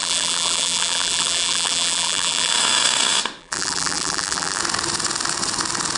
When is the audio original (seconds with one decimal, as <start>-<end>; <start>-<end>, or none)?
2.5-3.4; 4.6-6.0